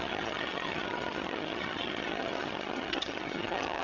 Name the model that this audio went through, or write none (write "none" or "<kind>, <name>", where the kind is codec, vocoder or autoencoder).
vocoder, HiFi-GAN